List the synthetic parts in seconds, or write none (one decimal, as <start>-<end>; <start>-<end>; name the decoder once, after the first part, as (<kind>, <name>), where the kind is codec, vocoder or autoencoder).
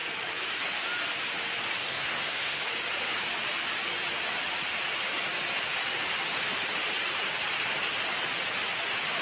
1.8-2.6 (codec, SNAC)